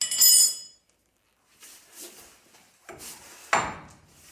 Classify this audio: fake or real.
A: real